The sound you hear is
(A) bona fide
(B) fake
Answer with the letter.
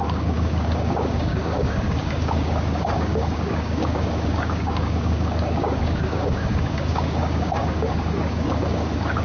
B